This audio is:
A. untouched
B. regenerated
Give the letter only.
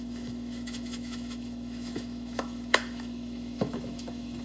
B